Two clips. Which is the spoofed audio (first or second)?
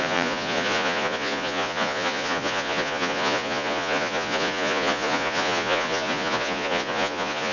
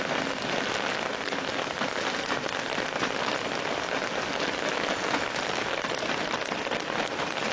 first